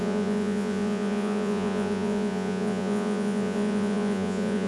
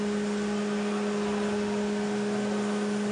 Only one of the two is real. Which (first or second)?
second